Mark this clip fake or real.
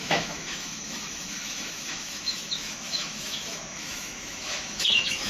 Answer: fake